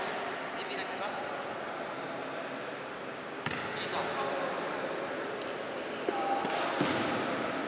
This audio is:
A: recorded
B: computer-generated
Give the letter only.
A